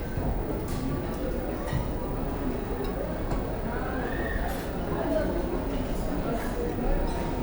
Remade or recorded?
recorded